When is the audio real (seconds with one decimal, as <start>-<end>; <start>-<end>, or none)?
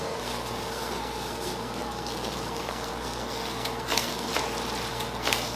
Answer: 4.3-4.9